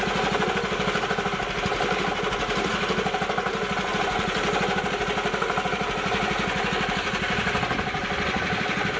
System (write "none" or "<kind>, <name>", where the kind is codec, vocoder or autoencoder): none